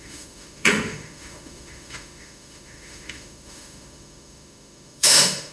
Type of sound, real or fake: fake